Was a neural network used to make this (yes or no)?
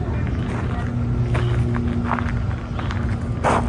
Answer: no